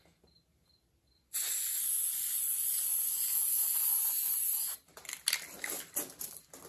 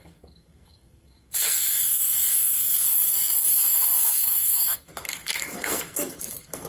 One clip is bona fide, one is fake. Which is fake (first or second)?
second